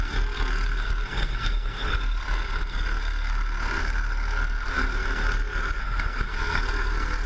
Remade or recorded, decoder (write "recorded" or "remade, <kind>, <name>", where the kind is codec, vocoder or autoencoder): remade, codec, SNAC